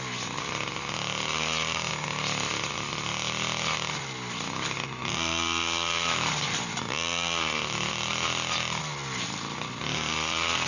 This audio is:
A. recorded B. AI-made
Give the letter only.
A